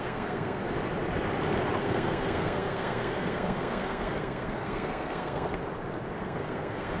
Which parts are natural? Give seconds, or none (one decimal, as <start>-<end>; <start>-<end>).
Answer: 0.6-1.8; 5.6-6.2